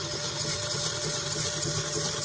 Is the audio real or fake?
real